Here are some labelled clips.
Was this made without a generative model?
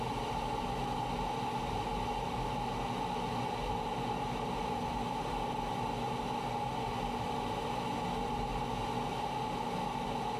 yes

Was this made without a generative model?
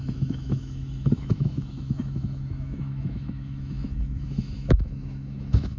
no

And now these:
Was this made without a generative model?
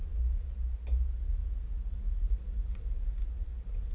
yes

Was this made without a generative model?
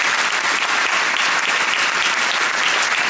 yes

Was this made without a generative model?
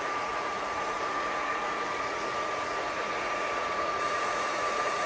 no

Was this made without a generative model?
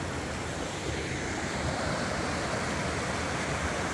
yes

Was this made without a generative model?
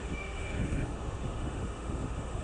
no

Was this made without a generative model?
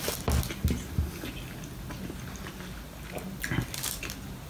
yes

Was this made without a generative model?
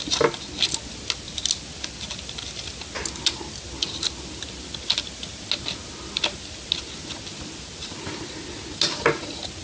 yes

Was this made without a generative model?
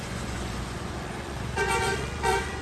no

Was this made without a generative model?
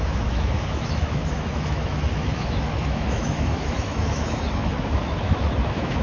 no